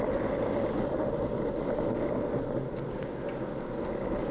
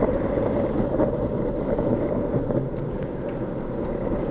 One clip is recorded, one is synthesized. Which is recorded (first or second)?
first